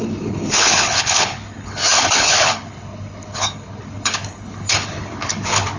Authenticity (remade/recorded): remade